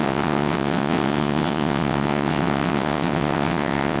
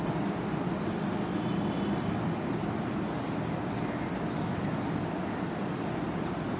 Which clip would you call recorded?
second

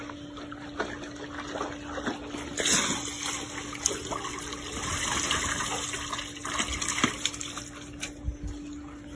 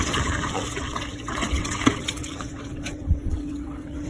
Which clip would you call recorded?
first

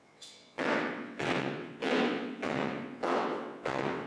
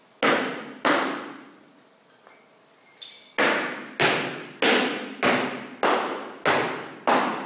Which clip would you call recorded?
second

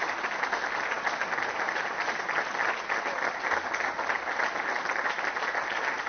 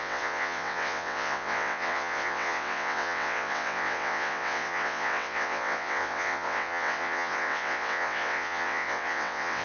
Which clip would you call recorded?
first